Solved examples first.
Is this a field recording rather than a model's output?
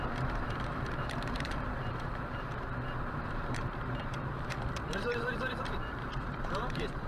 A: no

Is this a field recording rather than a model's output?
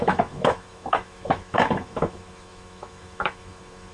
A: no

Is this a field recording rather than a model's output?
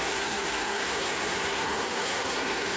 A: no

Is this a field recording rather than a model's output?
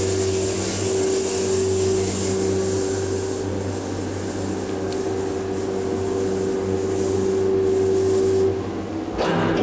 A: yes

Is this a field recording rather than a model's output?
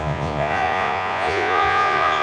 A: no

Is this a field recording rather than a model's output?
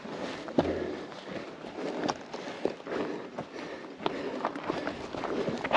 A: yes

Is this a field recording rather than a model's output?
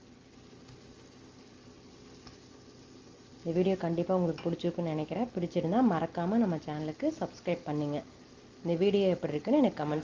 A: yes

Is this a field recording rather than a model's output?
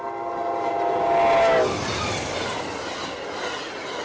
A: yes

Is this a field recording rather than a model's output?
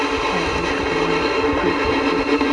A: yes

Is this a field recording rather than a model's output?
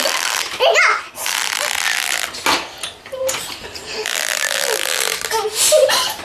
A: yes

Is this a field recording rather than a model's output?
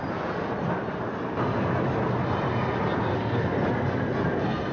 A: yes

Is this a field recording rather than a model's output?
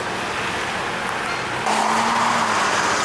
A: yes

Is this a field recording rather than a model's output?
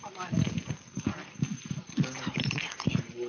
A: yes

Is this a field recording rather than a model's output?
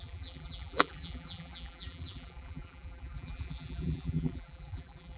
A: no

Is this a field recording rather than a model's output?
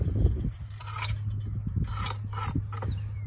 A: yes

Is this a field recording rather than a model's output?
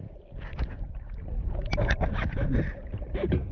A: yes